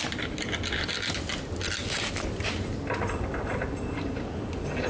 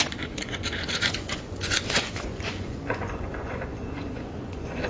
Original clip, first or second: first